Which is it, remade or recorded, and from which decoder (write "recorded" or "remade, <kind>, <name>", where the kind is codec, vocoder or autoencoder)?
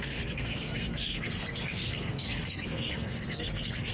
remade, codec, SNAC